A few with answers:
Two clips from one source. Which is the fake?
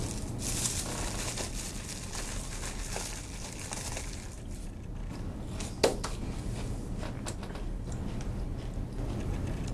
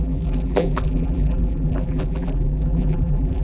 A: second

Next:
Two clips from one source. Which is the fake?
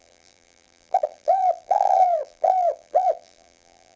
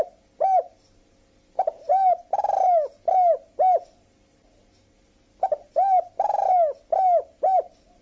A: first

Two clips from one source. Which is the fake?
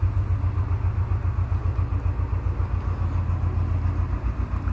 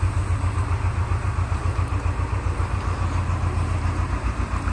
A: second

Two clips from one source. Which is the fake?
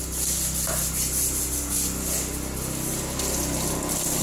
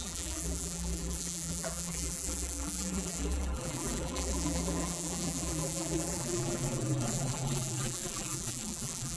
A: second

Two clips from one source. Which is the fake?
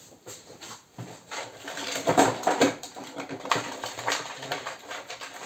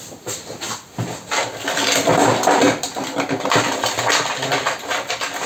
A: first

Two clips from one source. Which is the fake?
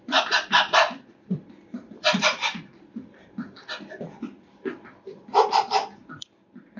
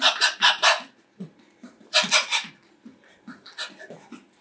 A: first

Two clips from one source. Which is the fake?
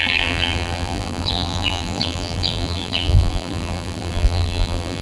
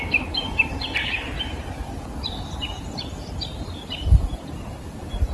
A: first